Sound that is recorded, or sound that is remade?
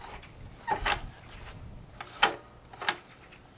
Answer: recorded